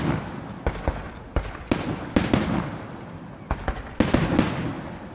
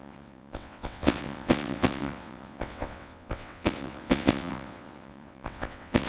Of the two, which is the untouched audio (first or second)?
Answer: first